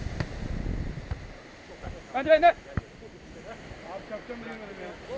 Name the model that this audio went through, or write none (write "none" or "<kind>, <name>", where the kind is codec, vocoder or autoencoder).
none